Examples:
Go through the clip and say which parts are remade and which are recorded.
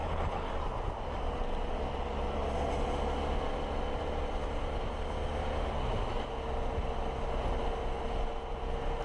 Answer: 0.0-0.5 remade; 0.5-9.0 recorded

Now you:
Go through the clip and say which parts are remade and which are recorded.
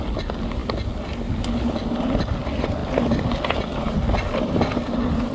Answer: 0.0-5.3 recorded